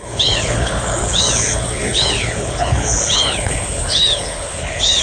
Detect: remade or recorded remade